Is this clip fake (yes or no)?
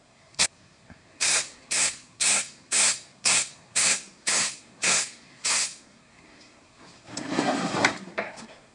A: yes